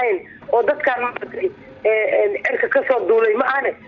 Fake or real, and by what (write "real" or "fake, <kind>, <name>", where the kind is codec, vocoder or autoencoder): real